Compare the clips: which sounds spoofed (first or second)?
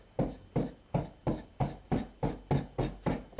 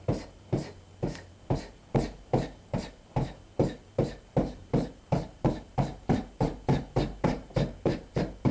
second